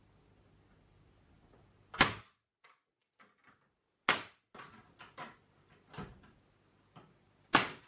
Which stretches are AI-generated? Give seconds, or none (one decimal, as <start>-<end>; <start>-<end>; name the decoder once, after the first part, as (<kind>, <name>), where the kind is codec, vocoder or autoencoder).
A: none

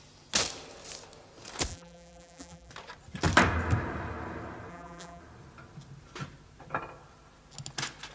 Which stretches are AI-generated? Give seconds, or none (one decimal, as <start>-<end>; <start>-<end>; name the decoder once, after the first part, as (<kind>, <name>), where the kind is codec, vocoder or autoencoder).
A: 1.7-2.7 (vocoder, BigVGAN v2); 4.7-5.2